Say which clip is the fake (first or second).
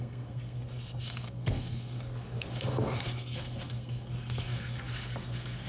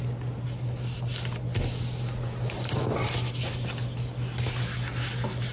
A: first